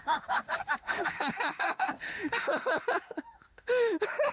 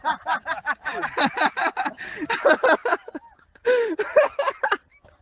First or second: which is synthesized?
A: first